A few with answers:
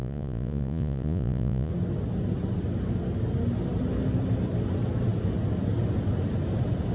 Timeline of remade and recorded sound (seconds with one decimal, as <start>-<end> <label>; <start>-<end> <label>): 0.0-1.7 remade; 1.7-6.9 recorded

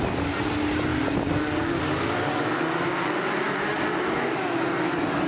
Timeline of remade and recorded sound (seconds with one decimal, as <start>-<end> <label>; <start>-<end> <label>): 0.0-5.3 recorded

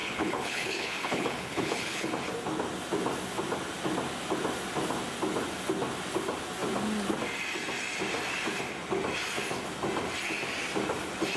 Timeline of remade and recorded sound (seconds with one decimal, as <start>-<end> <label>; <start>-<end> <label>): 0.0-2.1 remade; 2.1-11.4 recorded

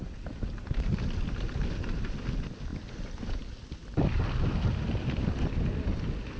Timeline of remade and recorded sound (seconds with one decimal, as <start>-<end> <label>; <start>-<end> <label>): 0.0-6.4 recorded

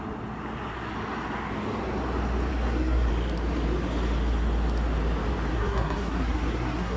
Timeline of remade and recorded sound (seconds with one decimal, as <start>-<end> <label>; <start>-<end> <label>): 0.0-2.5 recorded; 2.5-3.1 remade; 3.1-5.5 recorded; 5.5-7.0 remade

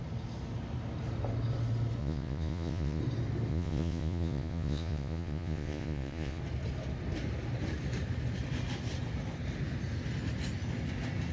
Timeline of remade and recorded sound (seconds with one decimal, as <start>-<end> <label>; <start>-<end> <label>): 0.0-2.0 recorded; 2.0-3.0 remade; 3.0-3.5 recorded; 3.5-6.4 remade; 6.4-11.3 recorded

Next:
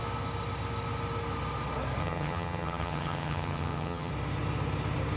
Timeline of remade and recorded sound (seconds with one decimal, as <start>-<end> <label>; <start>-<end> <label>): 0.0-2.0 recorded; 2.0-4.1 remade; 4.1-5.2 recorded

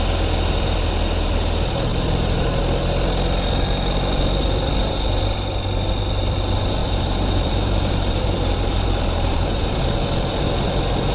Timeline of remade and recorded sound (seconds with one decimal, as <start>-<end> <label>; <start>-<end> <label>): 0.0-1.9 recorded; 1.9-2.6 remade; 2.6-6.8 recorded; 6.8-10.4 remade; 10.4-11.1 recorded